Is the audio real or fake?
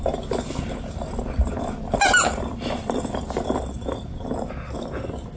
real